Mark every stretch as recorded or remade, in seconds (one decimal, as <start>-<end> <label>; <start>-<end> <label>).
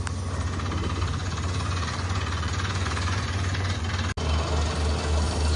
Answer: 0.0-1.2 recorded; 1.2-3.9 remade; 3.9-5.6 recorded